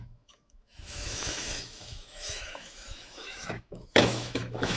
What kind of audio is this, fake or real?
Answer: fake